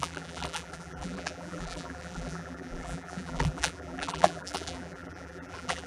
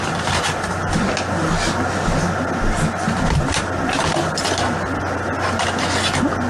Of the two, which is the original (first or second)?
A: second